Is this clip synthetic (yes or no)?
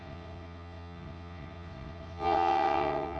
yes